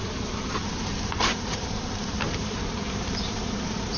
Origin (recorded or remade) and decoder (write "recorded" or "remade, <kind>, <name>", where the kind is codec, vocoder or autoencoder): remade, vocoder, BigVGAN v2